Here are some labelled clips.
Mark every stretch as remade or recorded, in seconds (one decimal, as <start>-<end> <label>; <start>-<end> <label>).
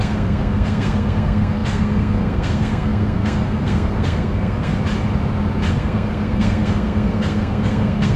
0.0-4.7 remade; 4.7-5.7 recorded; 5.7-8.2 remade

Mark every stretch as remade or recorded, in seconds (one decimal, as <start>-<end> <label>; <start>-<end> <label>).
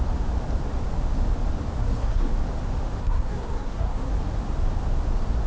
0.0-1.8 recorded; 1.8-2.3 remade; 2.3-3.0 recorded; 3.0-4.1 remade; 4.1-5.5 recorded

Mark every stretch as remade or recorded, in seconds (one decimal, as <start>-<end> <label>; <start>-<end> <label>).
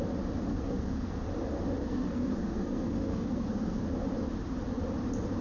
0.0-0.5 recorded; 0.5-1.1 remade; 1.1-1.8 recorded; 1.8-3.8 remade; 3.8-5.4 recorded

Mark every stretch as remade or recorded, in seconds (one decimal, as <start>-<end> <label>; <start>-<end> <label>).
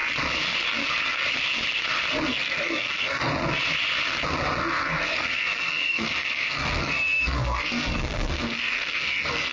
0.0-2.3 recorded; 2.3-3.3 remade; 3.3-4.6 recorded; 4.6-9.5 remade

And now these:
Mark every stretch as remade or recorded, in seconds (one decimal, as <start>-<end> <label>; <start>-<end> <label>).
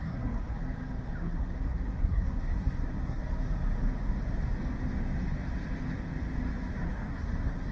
0.0-0.5 remade; 0.5-1.2 recorded; 1.2-3.2 remade; 3.2-6.8 recorded; 6.8-7.7 remade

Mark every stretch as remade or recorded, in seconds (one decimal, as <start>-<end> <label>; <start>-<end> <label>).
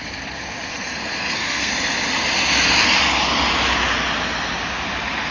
0.0-0.7 recorded; 0.7-1.7 remade; 1.7-5.3 recorded